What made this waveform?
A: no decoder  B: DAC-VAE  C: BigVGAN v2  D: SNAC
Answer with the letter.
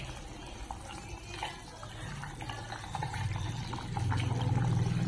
A